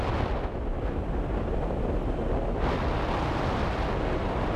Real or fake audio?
real